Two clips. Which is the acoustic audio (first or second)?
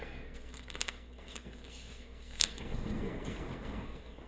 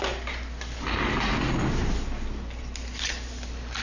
second